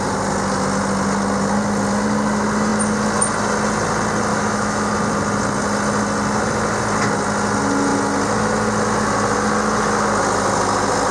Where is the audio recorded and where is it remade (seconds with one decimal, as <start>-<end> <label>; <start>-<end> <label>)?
0.0-4.3 recorded; 4.3-4.9 remade; 4.9-11.1 recorded